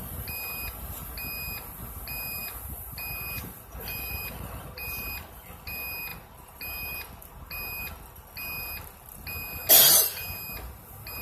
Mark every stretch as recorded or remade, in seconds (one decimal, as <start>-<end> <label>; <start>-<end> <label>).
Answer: 0.0-11.2 recorded